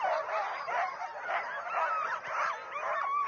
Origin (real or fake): real